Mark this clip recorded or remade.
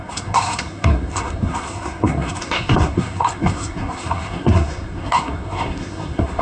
remade